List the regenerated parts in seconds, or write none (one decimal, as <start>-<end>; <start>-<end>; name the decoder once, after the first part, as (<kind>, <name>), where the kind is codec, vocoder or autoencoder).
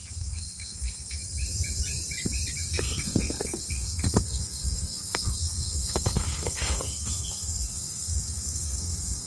0.0-1.2 (codec, SNAC); 2.7-9.3